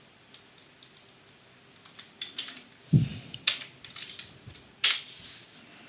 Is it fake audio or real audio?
real